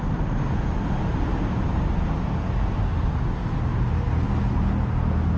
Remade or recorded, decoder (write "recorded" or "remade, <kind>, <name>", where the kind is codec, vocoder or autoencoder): recorded